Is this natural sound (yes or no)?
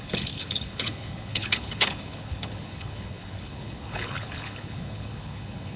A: no